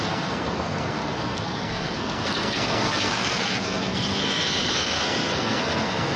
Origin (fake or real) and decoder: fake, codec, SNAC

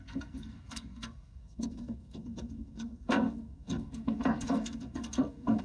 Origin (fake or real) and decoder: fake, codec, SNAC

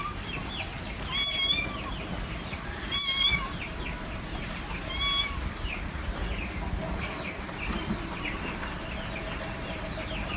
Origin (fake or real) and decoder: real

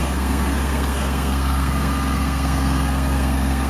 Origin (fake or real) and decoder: fake, codec, SNAC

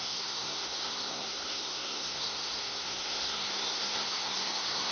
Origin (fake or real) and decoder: fake, codec, SNAC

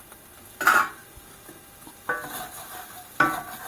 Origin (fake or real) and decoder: real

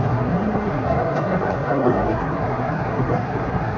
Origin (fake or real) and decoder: fake, codec, SNAC